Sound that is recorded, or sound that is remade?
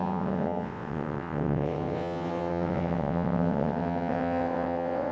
remade